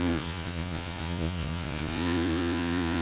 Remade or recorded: remade